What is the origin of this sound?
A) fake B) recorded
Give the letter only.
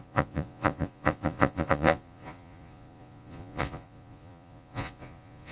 A